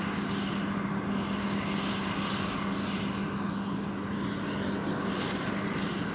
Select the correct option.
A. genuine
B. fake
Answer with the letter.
A